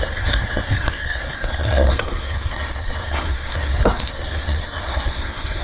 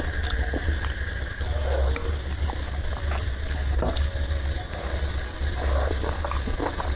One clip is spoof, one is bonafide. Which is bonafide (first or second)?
second